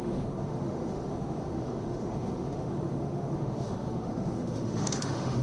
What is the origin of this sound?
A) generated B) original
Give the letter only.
A